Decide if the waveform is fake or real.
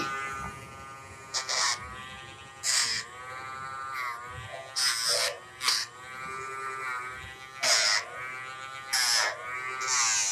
real